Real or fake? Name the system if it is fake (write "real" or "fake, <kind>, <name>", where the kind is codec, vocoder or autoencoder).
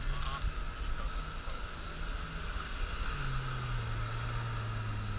real